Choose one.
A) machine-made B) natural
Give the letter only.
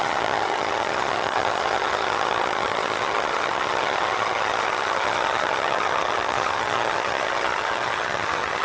A